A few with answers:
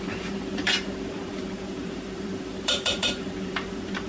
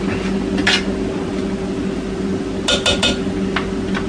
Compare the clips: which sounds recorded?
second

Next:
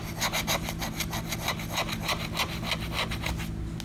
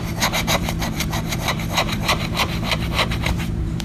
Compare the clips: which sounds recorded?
first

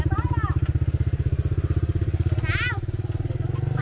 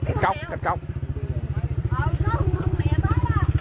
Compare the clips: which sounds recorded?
first